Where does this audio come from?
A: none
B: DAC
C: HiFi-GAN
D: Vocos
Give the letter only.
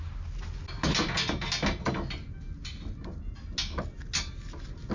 A